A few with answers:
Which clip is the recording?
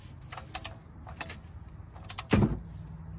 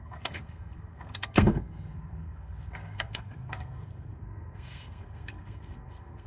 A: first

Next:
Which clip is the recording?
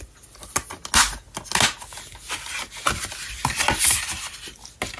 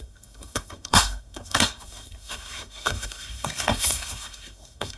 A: first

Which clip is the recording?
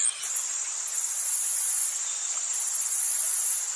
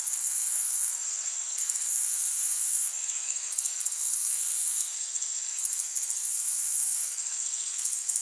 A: first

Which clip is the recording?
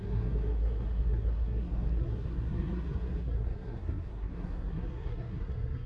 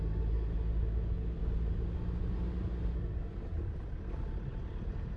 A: second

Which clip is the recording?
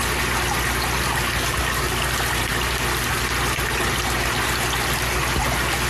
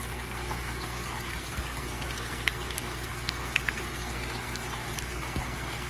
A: first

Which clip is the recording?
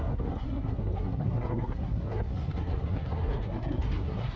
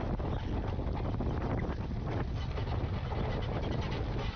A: second